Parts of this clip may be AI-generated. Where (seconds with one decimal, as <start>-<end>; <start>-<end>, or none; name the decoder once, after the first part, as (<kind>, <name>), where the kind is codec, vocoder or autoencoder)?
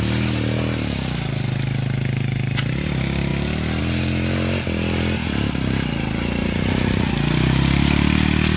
6.4-7.1 (vocoder, Vocos)